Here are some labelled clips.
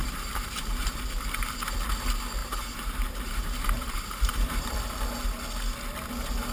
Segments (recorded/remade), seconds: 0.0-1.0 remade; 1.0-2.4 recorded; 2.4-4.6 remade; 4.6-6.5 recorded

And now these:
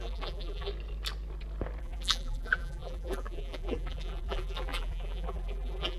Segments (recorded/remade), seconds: 0.0-0.7 remade; 0.7-1.8 recorded; 1.8-6.0 remade

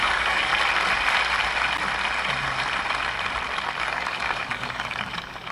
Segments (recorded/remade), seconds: 0.0-0.5 remade; 0.5-3.8 recorded; 3.8-5.5 remade

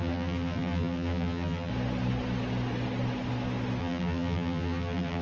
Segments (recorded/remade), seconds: 0.0-1.7 remade; 1.7-3.8 recorded; 3.8-5.2 remade

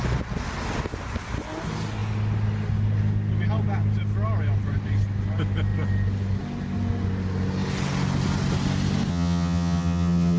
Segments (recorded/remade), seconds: 0.0-9.1 recorded; 9.1-10.4 remade

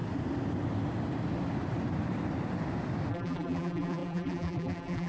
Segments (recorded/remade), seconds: 0.0-3.1 recorded; 3.1-5.1 remade

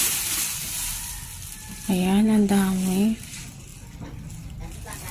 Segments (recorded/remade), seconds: 0.0-5.1 recorded